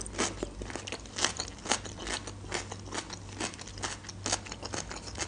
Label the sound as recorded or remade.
recorded